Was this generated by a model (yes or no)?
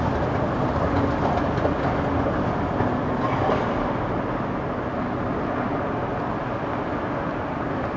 no